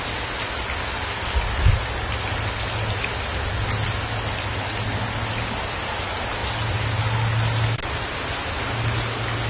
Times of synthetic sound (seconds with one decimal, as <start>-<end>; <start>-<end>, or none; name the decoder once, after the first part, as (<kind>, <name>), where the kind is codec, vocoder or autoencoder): none